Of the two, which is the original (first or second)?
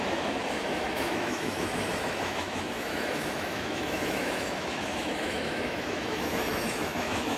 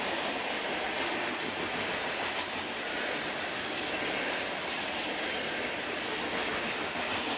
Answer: second